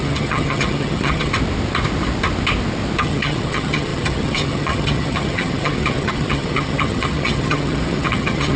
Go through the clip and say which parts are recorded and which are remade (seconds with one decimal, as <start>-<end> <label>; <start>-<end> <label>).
0.0-1.3 remade; 1.3-3.0 recorded; 3.0-8.6 remade